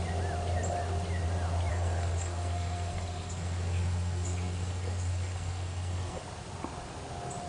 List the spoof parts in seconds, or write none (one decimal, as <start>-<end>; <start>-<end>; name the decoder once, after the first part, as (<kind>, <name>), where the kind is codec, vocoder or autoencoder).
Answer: 1.7-6.2 (codec, SNAC)